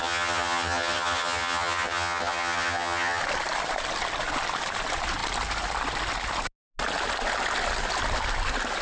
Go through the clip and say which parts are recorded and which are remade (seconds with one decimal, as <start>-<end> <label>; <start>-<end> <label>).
0.0-3.2 remade; 3.2-8.8 recorded